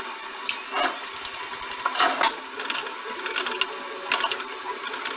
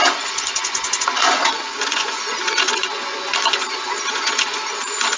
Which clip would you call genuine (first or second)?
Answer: first